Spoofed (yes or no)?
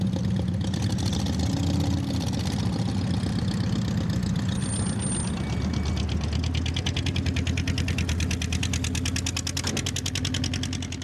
no